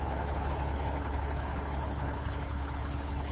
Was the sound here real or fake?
fake